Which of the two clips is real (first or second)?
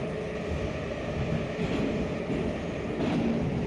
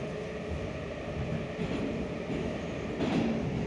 first